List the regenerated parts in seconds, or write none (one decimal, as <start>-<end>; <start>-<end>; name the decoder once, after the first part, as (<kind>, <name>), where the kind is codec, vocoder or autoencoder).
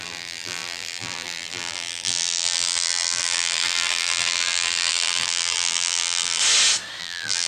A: 0.0-6.4 (vocoder, BigVGAN v2); 7.0-7.5